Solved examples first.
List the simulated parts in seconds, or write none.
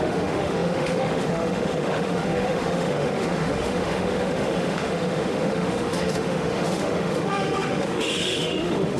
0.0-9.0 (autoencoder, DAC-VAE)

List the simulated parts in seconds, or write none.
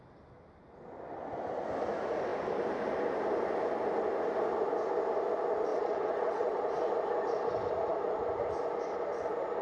5.7-6.9 (vocoder, WaveNeXt)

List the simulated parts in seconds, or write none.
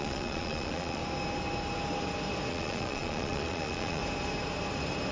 0.0-1.0 (vocoder, Vocos); 2.5-4.0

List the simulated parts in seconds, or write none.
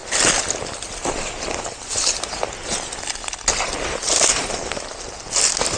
none